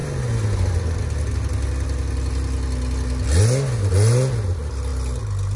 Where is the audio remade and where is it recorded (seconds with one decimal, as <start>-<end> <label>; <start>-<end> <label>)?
0.0-5.6 recorded